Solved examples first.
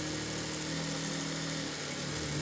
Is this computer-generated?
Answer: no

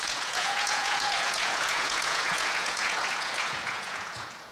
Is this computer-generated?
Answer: yes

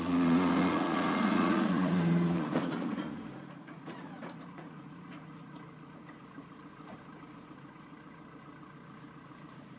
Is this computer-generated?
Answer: yes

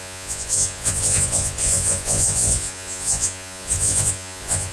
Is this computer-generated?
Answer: yes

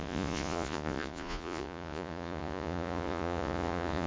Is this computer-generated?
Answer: yes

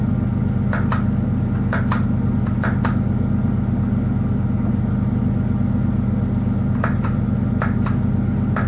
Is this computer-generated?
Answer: no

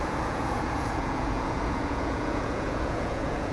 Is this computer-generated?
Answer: yes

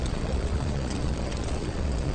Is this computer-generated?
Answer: yes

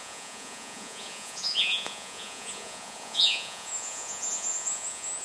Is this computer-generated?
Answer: yes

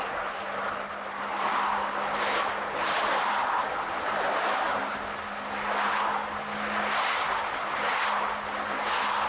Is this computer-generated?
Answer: no